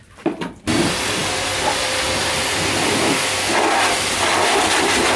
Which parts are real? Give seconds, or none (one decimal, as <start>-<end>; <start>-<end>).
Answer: 0.0-5.2